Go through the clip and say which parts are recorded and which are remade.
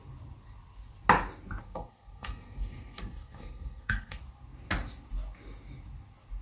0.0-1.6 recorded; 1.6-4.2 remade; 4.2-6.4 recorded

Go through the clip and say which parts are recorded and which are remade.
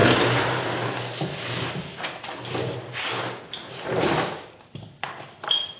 0.0-5.8 recorded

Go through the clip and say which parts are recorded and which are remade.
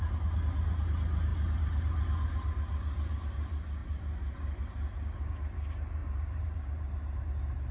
0.0-3.8 recorded; 3.8-4.6 remade; 4.6-6.0 recorded; 6.0-7.3 remade; 7.3-7.7 recorded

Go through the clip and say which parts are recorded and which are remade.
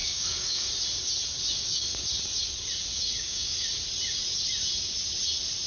0.0-0.7 remade; 0.7-1.5 recorded; 1.5-2.0 remade; 2.0-2.9 recorded; 2.9-3.8 remade; 3.8-5.7 recorded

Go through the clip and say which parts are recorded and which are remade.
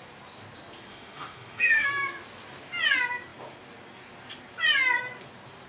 0.0-0.9 recorded; 0.9-1.9 remade; 1.9-5.7 recorded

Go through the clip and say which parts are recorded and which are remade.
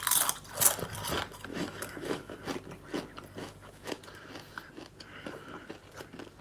0.0-1.5 recorded; 1.5-2.4 remade; 2.4-3.4 recorded; 3.4-4.0 remade; 4.0-6.4 recorded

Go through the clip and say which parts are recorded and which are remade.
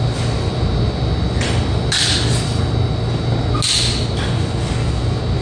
0.0-0.5 recorded; 0.5-2.1 remade; 2.1-5.4 recorded